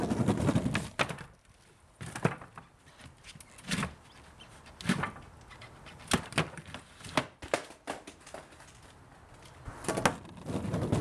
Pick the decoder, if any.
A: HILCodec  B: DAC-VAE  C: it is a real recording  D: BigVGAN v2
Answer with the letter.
C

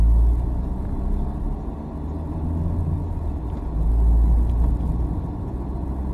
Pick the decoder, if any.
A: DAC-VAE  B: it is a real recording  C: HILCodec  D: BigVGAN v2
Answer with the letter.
B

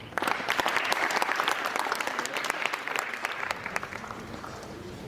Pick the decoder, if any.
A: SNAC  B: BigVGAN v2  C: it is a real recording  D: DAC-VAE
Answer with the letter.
B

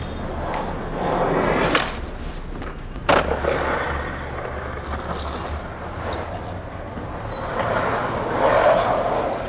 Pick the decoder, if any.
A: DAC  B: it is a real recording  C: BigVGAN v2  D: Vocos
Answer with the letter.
B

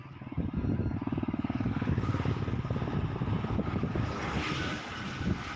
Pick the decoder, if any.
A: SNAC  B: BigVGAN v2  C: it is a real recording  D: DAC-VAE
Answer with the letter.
C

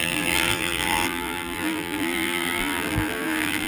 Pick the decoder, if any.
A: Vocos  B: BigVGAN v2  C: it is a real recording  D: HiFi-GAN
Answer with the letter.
B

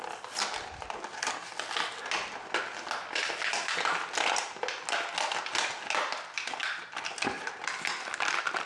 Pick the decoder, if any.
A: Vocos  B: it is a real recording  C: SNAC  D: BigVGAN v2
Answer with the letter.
B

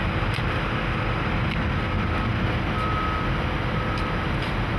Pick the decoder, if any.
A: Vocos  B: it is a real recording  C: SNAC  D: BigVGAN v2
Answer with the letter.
B